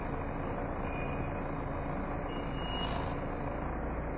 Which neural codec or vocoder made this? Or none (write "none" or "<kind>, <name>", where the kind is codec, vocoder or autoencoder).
none